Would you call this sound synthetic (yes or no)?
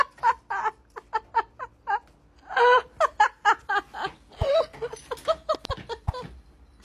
no